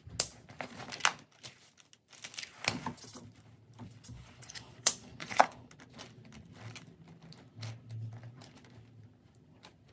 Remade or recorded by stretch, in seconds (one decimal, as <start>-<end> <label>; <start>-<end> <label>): 0.0-4.1 recorded; 4.1-5.7 remade; 5.7-9.9 recorded